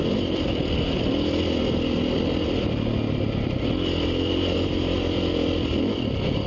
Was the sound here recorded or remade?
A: recorded